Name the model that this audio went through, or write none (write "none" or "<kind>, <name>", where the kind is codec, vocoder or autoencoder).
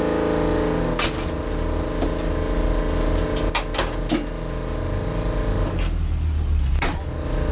none